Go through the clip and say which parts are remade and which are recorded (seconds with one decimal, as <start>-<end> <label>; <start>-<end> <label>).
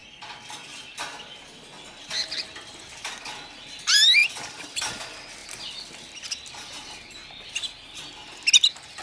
0.0-4.2 recorded; 4.2-4.9 remade; 4.9-5.4 recorded; 5.4-7.5 remade; 7.5-9.0 recorded